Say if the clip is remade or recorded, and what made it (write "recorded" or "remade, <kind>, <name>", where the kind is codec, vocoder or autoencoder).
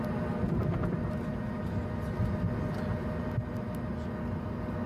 recorded